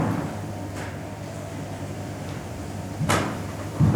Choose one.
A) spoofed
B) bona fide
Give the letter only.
A